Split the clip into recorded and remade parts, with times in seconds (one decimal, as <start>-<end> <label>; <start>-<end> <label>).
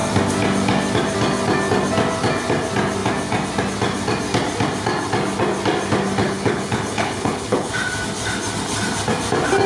0.0-6.2 recorded; 6.2-7.7 remade; 7.7-9.7 recorded